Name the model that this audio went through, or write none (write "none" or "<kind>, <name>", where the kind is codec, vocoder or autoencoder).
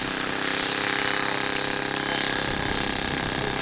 none